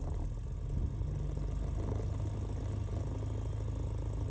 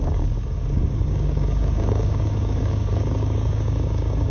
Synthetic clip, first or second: second